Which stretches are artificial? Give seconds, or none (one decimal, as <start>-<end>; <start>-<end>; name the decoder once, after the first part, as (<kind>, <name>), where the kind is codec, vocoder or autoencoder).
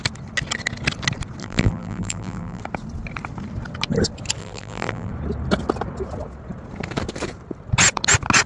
1.4-2.6 (vocoder, BigVGAN v2); 4.4-5.1